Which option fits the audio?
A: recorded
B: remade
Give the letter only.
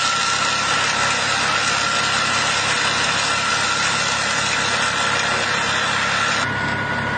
A